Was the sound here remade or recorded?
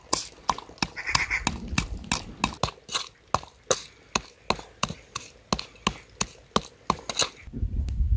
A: recorded